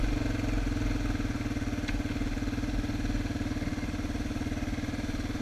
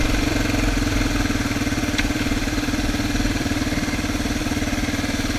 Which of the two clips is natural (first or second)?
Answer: first